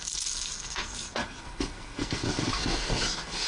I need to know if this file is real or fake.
fake